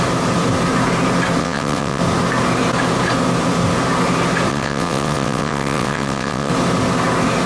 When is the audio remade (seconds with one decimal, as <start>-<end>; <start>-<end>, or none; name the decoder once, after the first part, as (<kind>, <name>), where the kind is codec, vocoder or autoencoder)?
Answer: 1.4-2.0 (vocoder, WaveNeXt); 4.5-6.5